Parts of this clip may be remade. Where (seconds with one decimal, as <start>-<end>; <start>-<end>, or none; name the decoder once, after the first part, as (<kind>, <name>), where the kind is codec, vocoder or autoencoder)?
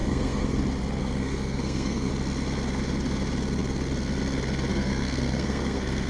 0.0-0.6 (codec, SNAC); 1.0-2.1; 4.7-6.1